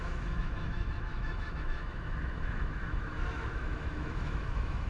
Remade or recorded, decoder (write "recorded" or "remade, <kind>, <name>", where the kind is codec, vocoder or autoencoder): remade, autoencoder, DAC-VAE